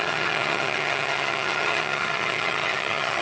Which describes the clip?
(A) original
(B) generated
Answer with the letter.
B